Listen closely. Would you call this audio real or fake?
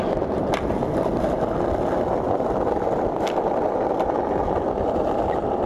real